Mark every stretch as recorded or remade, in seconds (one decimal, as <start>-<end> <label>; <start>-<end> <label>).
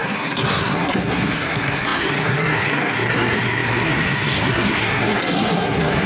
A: 0.0-6.1 remade